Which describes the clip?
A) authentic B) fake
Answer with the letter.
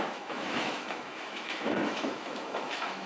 B